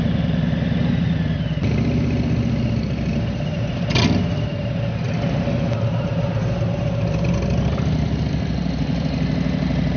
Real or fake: real